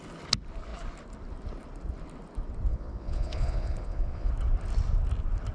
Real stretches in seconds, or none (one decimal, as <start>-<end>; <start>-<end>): 0.0-2.7; 4.3-5.5